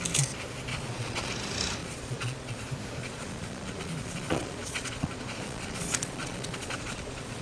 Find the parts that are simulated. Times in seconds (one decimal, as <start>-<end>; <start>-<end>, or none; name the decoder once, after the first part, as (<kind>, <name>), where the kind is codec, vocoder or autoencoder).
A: 0.7-1.3 (vocoder, Vocos); 1.8-2.6; 3.0-7.4